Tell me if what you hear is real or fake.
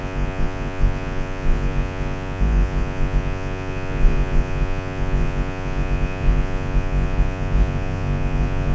fake